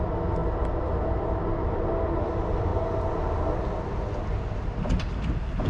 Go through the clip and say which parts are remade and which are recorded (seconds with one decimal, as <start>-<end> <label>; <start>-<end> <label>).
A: 0.0-5.7 recorded